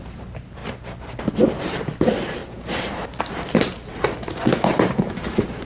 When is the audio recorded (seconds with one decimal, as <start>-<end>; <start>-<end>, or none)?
0.6-1.6; 3.9-4.7